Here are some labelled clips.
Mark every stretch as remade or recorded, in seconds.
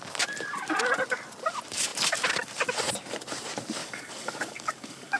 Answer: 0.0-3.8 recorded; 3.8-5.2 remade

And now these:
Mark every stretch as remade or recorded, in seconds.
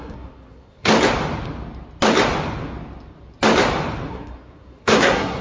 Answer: 0.0-0.9 remade; 0.9-4.1 recorded; 4.1-5.4 remade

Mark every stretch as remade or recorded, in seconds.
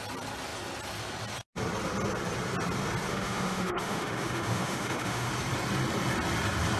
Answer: 0.0-3.1 recorded; 3.1-5.3 remade; 5.3-6.8 recorded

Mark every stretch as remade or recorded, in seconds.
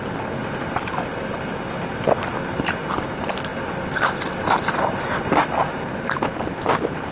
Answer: 0.0-3.5 recorded; 3.5-4.9 remade; 4.9-7.1 recorded